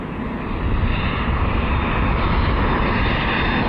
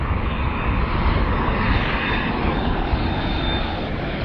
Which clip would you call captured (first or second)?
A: first